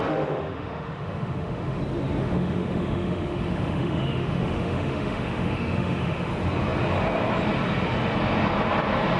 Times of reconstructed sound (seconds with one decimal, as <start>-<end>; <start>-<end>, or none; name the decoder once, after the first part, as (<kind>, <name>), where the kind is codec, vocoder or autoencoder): 0.0-1.8 (autoencoder, DAC-VAE); 2.2-6.3

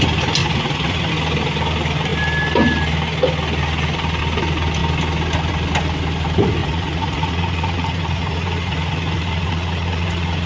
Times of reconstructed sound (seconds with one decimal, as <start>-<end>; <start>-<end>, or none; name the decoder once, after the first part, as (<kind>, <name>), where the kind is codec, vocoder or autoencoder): 0.4-1.1 (vocoder, Vocos); 6.6-10.5

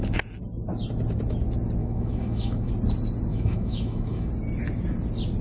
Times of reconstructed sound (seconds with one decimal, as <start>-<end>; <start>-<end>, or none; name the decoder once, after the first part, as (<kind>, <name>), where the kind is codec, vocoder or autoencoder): 1.8-2.7 (autoencoder, DAC-VAE); 3.3-4.3

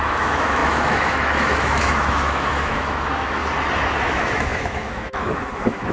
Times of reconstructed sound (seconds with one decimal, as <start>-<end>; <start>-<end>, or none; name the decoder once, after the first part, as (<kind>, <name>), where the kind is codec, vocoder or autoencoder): 0.0-3.4 (autoencoder, DAC-VAE); 4.0-5.9

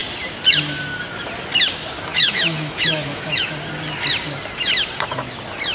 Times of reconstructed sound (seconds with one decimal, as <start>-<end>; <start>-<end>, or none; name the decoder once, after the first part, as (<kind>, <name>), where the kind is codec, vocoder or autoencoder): 2.1-3.5 (autoencoder, DAC-VAE)

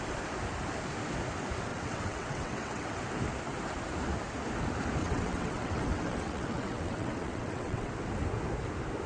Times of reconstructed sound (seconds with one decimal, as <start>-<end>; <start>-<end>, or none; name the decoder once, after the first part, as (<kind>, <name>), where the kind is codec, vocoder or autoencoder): 1.7-3.0 (vocoder, WaveNeXt); 5.0-7.9

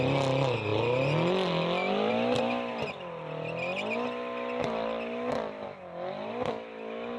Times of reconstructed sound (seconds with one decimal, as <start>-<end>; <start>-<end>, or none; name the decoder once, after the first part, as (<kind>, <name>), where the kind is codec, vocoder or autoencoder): none

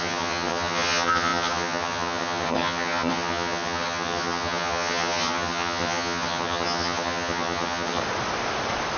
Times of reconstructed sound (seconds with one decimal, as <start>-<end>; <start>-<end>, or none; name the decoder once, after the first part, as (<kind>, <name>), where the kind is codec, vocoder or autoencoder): 0.0-8.0 (vocoder, HiFi-GAN)